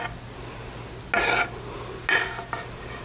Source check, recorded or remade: recorded